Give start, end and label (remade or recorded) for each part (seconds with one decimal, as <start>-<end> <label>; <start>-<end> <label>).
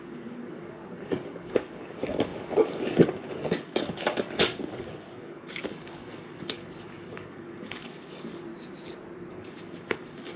0.0-8.5 remade; 8.5-9.3 recorded; 9.3-10.4 remade